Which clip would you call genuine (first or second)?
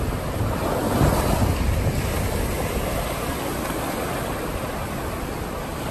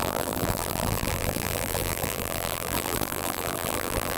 first